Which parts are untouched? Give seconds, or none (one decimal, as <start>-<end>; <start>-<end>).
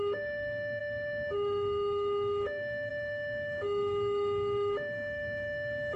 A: none